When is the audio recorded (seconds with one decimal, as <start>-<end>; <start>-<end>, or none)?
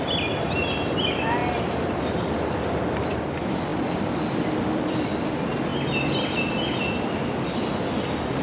0.0-8.4